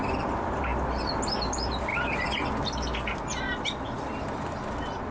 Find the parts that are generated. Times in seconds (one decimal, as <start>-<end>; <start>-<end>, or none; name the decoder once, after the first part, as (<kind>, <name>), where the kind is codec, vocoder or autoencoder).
0.0-0.7 (vocoder, BigVGAN v2); 1.3-1.9; 4.2-5.1